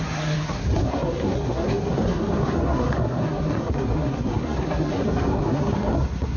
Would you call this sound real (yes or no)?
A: no